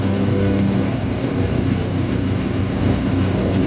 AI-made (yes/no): yes